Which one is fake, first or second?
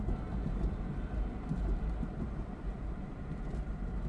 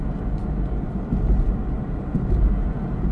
first